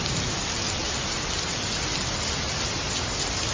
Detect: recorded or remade recorded